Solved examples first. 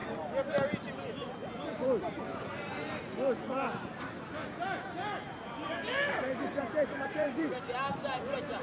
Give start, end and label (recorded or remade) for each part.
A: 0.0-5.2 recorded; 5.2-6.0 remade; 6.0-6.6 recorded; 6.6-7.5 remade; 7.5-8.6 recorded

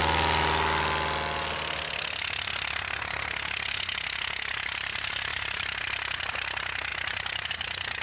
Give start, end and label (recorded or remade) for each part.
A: 0.0-5.3 recorded; 5.3-5.8 remade; 5.8-6.9 recorded; 6.9-7.5 remade; 7.5-8.0 recorded

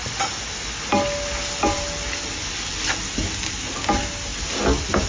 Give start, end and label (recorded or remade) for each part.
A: 0.0-5.1 recorded

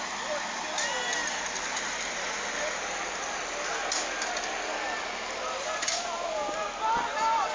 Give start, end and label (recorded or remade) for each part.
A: 0.0-7.5 recorded